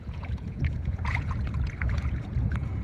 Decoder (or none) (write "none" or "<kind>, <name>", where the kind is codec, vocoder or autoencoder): vocoder, Vocos